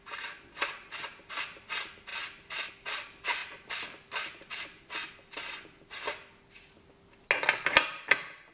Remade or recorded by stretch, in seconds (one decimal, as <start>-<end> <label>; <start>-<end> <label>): 0.0-2.1 recorded; 2.1-2.7 remade; 2.7-3.4 recorded; 3.4-4.5 remade; 4.5-8.5 recorded